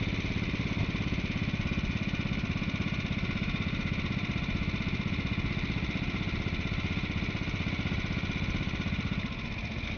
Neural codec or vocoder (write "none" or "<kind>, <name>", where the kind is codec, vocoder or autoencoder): none